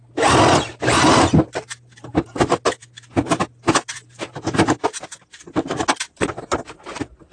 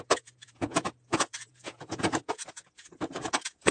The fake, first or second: second